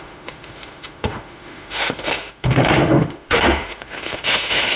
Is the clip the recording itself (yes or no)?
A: no